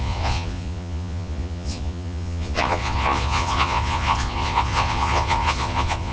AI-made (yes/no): yes